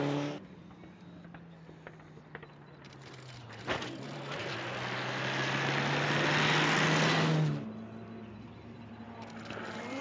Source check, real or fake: real